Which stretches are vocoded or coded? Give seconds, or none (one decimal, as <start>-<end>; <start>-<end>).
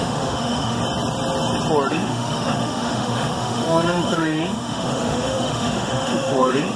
0.0-0.8; 1.9-6.8